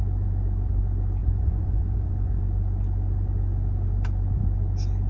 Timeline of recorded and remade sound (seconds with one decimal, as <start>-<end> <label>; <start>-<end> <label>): 0.0-1.2 recorded; 1.2-2.4 remade; 2.4-5.1 recorded